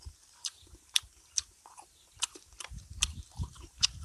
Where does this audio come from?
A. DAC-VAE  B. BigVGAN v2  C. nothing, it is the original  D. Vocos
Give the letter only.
B